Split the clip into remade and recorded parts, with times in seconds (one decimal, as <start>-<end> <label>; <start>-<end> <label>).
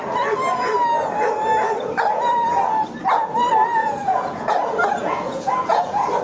0.0-3.8 recorded; 3.8-6.2 remade